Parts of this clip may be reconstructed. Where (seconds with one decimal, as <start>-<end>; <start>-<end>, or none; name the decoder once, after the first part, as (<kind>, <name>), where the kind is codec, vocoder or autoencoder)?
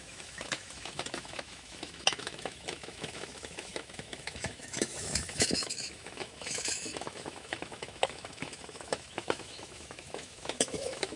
0.0-11.2 (autoencoder, DAC-VAE)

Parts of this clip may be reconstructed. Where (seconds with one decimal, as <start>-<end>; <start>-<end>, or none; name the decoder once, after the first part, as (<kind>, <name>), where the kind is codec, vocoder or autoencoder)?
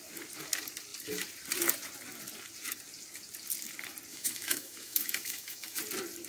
4.1-5.8 (autoencoder, DAC-VAE)